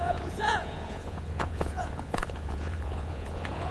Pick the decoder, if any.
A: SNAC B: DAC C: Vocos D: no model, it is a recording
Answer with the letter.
C